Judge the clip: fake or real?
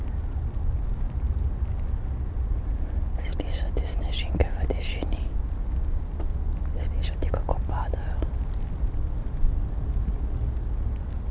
real